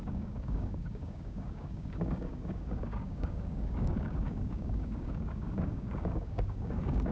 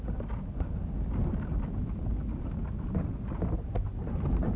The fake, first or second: first